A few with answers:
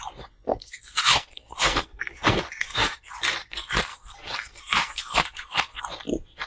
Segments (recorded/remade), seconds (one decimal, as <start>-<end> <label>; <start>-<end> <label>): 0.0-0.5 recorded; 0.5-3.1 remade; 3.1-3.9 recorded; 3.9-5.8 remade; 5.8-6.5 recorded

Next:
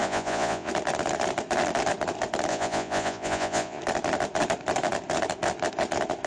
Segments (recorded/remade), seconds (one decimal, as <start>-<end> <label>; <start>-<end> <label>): 0.0-0.7 remade; 0.7-2.5 recorded; 2.5-3.8 remade; 3.8-6.3 recorded

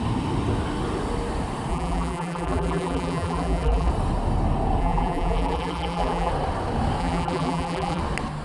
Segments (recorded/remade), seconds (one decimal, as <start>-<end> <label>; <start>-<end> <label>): 0.0-1.7 recorded; 1.7-3.9 remade; 3.9-4.8 recorded; 4.8-6.3 remade; 6.3-7.0 recorded; 7.0-8.0 remade; 8.0-8.4 recorded

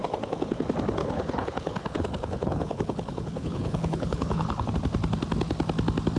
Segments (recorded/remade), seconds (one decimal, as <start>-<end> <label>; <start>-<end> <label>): 0.0-0.6 remade; 0.6-1.0 recorded; 1.0-4.7 remade; 4.7-6.2 recorded

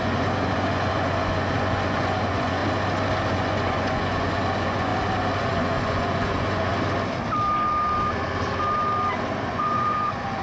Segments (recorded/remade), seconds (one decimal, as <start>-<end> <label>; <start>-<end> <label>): 0.0-2.6 remade; 2.6-3.3 recorded; 3.3-4.9 remade; 4.9-5.4 recorded; 5.4-6.7 remade; 6.7-9.5 recorded; 9.5-10.4 remade

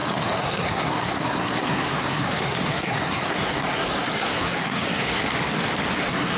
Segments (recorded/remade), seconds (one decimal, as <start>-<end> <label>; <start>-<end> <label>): 0.0-5.2 remade; 5.2-6.0 recorded; 6.0-6.4 remade

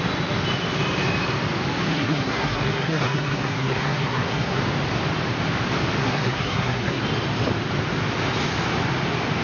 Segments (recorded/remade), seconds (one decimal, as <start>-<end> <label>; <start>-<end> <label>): 0.0-1.9 recorded; 1.9-4.6 remade; 4.6-6.0 recorded; 6.0-7.0 remade; 7.0-9.4 recorded